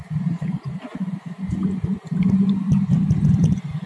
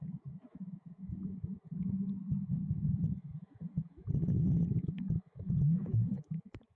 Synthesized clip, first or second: second